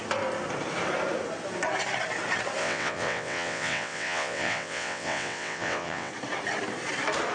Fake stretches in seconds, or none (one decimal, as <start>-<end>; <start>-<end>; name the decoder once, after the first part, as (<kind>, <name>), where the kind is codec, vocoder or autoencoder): 2.6-6.1 (vocoder, WaveNeXt)